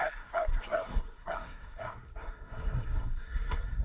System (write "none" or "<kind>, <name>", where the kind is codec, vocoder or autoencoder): codec, SNAC